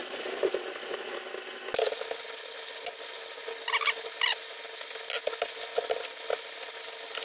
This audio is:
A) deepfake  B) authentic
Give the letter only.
B